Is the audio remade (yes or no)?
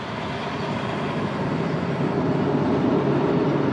no